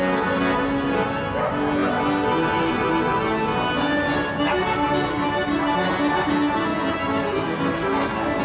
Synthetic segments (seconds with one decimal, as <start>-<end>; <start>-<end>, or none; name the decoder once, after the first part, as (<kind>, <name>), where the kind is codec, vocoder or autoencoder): none